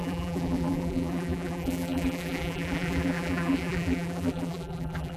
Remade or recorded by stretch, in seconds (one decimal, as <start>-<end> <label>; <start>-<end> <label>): 0.0-5.2 remade